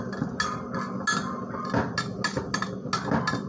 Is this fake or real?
real